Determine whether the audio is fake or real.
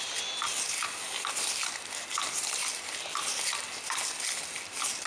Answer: real